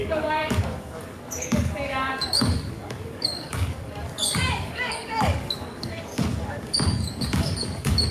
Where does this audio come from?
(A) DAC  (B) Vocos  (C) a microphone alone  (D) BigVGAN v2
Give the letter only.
A